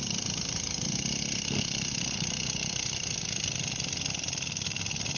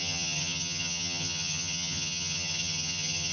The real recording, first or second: first